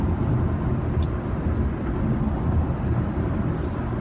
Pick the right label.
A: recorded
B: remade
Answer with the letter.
A